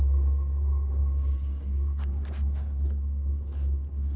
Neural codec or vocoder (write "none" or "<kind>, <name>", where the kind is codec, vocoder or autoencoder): codec, SNAC